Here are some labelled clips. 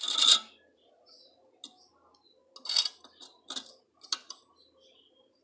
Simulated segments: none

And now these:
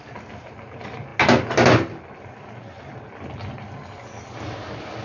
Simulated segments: none